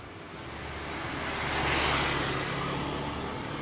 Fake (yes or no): no